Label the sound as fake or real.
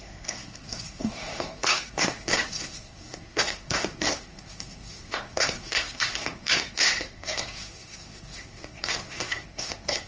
fake